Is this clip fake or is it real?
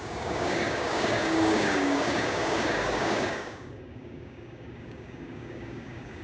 fake